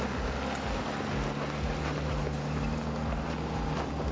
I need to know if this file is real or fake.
real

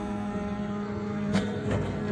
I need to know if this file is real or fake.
fake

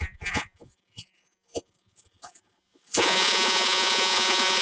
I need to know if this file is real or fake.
fake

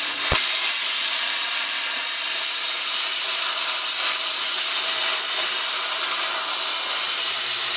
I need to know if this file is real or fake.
fake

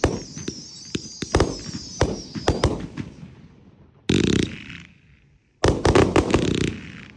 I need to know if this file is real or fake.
real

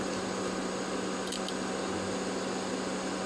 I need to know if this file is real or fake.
real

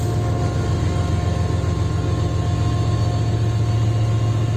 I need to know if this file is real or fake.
real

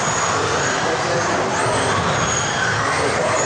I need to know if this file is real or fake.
real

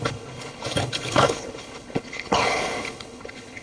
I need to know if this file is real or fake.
fake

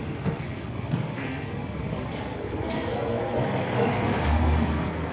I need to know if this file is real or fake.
fake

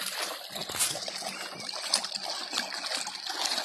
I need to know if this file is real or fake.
real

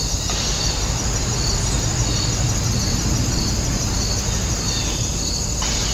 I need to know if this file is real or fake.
real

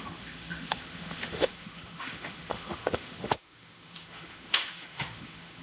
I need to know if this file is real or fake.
fake